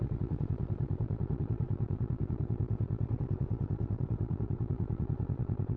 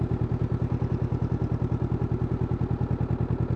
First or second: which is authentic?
second